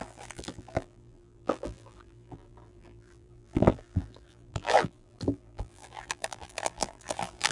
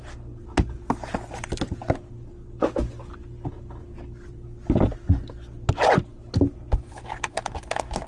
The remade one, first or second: first